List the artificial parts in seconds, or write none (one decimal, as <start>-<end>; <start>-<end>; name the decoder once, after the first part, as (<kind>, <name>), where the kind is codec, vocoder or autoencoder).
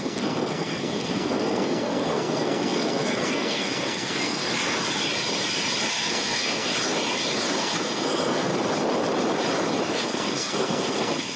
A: 0.0-4.4 (codec, SNAC); 5.9-6.7; 7.6-8.5; 9.9-11.4